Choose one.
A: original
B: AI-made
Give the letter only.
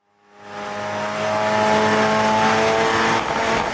A